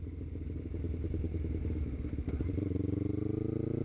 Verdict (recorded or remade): recorded